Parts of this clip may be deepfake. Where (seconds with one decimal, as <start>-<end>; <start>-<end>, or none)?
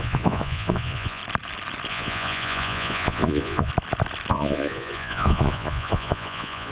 0.0-1.2; 1.9-3.7; 4.3-6.7